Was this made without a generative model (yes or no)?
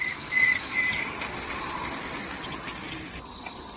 no